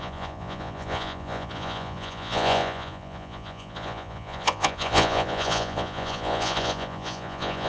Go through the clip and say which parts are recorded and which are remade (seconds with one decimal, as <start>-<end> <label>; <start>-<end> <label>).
0.0-7.7 remade